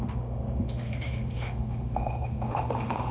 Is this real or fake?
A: fake